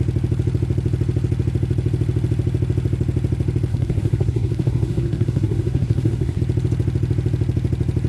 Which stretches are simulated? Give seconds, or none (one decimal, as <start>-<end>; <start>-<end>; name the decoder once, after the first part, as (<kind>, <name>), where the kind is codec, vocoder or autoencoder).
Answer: 3.7-6.4 (codec, SNAC)